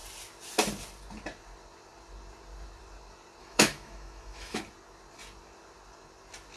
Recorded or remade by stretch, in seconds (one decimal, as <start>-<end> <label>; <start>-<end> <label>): 0.0-3.4 recorded; 3.4-4.6 remade; 4.6-6.6 recorded